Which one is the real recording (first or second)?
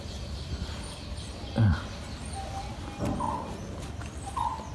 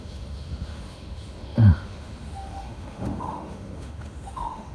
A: first